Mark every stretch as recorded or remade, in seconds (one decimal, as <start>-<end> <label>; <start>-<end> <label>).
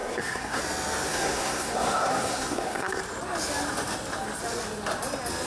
0.0-0.6 remade; 0.6-1.1 recorded; 1.1-3.0 remade; 3.0-5.5 recorded